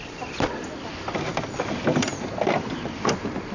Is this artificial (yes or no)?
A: no